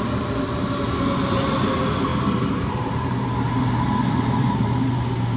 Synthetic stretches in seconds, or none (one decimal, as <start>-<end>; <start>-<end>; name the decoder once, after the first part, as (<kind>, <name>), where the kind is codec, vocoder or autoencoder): 2.1-5.4 (vocoder, BigVGAN v2)